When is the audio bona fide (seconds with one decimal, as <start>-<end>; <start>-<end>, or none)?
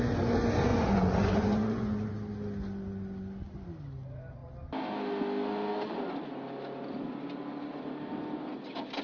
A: 0.0-0.7; 2.1-9.0